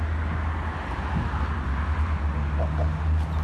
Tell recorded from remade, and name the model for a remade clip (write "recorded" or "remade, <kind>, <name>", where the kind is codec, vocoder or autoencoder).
recorded